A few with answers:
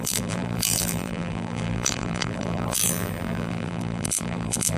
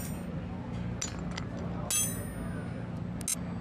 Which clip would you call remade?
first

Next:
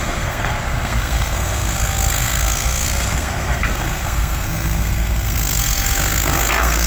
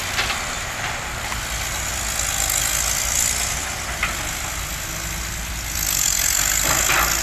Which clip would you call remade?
first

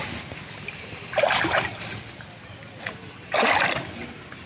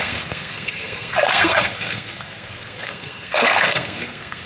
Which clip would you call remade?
second